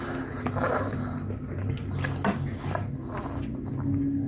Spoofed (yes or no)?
no